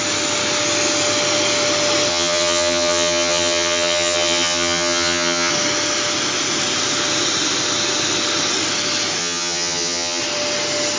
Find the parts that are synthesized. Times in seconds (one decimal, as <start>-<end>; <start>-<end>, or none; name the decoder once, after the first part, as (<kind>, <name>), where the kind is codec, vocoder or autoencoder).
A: 2.1-5.5 (vocoder, HiFi-GAN); 9.2-10.2